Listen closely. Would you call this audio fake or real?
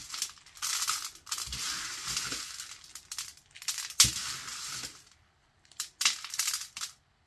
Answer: real